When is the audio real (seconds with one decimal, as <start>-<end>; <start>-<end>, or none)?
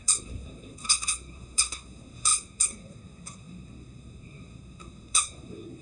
none